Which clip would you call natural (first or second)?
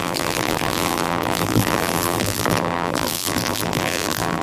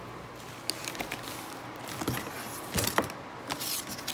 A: second